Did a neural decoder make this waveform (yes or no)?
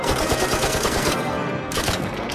yes